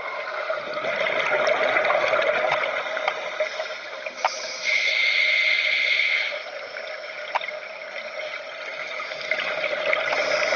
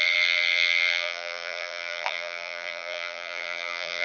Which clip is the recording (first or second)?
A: first